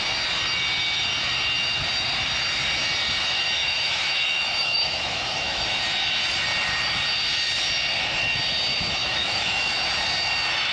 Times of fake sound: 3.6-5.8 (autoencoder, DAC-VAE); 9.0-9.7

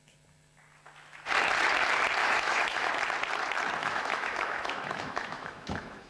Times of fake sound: 2.2-2.9 (autoencoder, DAC-VAE); 3.8-6.1

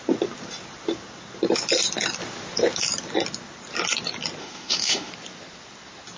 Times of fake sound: 4.4-5.1 (autoencoder, DAC-VAE)

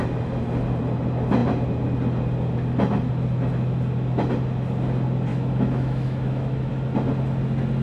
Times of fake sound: 5.3-6.7 (autoencoder, DAC-VAE)

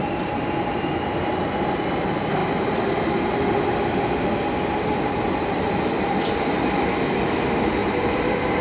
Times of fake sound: none

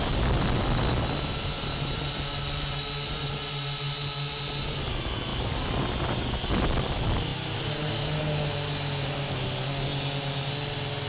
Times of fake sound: none

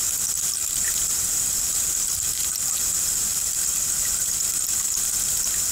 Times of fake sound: none

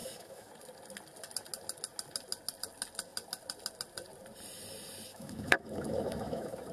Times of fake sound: 0.0-0.5 (autoencoder, DAC-VAE); 5.1-6.7